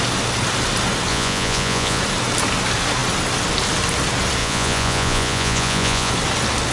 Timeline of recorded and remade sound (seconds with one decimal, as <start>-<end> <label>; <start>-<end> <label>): 0.0-1.1 recorded; 1.1-2.0 remade; 2.0-4.4 recorded; 4.4-6.1 remade; 6.1-6.7 recorded